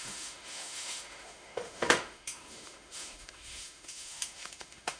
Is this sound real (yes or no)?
no